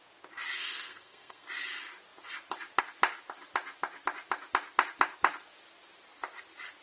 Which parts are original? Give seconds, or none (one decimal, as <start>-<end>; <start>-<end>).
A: 0.0-0.6; 1.5-6.8